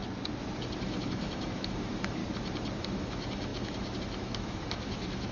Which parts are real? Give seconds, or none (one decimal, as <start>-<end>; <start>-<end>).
0.0-0.8; 2.2-2.8